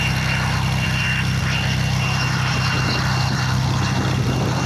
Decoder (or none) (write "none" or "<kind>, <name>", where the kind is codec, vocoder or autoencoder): none